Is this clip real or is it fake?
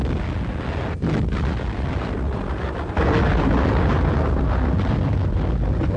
real